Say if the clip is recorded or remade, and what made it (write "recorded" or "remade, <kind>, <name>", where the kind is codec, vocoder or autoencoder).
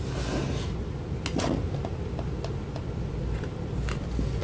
recorded